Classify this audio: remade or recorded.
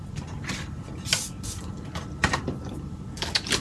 recorded